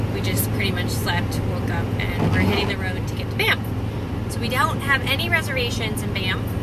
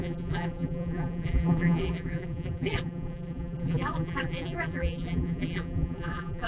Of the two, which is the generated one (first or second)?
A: second